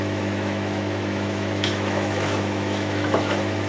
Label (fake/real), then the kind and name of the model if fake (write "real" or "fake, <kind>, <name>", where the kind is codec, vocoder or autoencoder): fake, autoencoder, DAC-VAE